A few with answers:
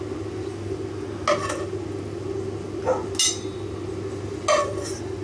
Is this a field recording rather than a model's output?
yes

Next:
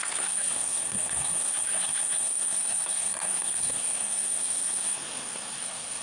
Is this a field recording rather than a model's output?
no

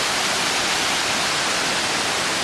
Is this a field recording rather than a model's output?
yes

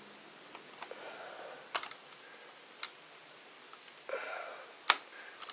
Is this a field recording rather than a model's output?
yes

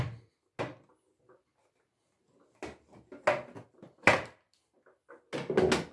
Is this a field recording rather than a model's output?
yes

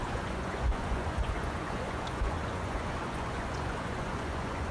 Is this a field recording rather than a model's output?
no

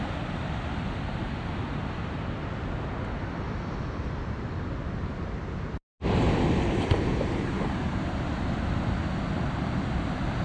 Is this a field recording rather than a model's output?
yes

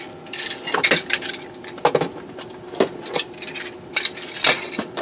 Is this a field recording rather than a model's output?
yes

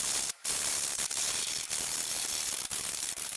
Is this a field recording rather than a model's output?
no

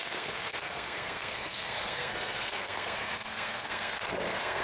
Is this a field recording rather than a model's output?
no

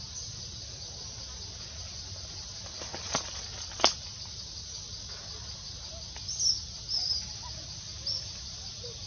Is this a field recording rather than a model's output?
yes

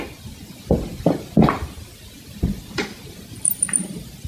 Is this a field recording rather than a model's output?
yes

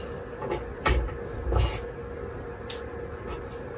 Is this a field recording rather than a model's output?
yes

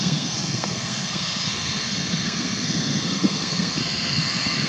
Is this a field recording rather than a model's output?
no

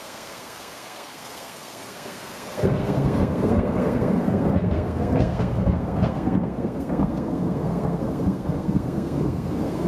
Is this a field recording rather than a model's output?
no